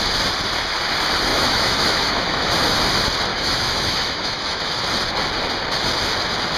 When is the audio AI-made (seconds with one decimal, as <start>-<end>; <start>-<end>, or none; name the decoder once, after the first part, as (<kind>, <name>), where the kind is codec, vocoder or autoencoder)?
1.3-2.5 (autoencoder, DAC-VAE); 3.3-4.7